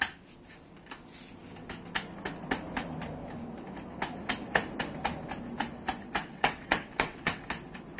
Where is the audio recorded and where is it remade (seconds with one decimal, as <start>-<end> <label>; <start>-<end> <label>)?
0.0-6.3 recorded; 6.3-7.4 remade; 7.4-8.0 recorded